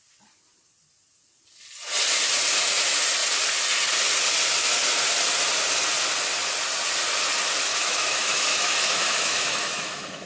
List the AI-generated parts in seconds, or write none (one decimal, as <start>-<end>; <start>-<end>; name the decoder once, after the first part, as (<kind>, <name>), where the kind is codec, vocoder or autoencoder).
7.7-10.3 (autoencoder, DAC-VAE)